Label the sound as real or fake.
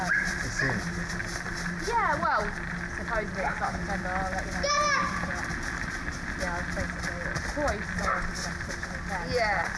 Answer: real